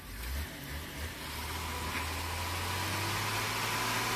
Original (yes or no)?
yes